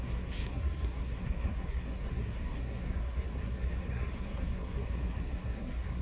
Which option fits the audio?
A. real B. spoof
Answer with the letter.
B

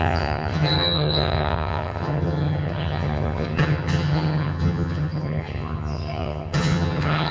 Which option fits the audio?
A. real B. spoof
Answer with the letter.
B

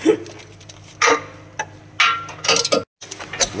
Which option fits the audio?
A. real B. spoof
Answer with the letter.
A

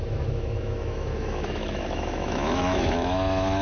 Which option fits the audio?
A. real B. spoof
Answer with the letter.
B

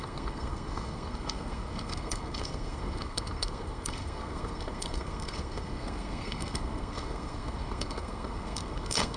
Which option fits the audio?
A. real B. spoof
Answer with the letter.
B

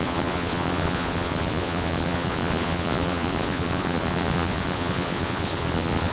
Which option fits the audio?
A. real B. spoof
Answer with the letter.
B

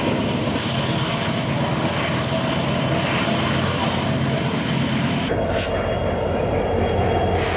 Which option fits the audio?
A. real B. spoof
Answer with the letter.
A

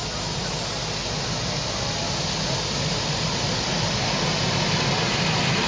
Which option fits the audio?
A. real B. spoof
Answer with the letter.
A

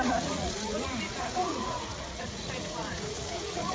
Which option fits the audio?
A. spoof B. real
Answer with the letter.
A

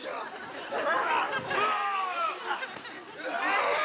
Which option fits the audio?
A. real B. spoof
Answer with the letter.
A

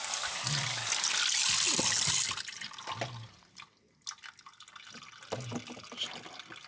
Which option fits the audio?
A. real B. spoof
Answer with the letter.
A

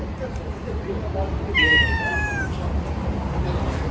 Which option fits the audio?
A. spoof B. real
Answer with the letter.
B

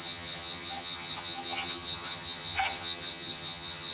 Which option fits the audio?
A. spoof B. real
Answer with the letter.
A